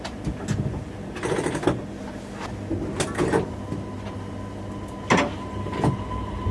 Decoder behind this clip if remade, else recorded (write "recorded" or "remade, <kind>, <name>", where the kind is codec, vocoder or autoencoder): recorded